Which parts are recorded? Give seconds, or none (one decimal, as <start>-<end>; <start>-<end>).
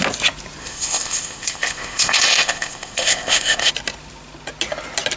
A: 0.0-0.6; 3.7-5.2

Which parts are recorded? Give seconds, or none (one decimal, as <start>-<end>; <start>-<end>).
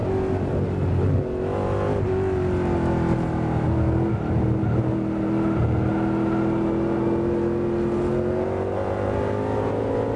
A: 0.0-10.2